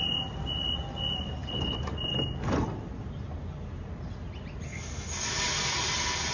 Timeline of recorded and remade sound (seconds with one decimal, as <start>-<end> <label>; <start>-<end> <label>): 0.0-6.3 recorded